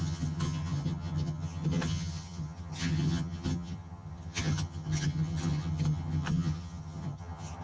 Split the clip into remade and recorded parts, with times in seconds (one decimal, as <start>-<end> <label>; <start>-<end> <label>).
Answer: 0.0-7.6 remade